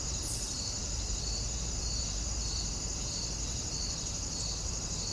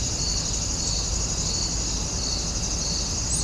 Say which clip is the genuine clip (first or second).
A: second